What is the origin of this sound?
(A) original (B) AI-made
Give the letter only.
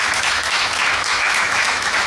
B